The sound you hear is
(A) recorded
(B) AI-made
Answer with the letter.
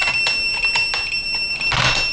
A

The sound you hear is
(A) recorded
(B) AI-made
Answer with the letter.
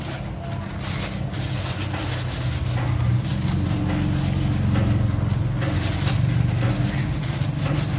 A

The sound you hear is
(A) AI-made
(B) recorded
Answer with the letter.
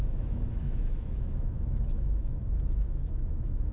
A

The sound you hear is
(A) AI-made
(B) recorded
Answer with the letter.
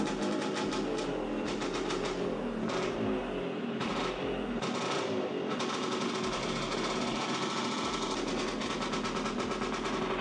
B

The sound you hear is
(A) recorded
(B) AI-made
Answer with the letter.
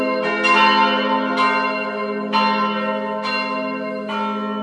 A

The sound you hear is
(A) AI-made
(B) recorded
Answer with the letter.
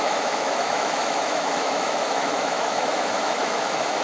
A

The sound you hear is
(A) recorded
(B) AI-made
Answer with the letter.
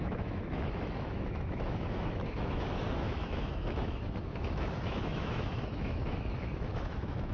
B